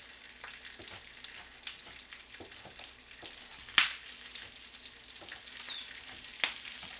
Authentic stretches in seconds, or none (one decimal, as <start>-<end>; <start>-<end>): 0.0-7.0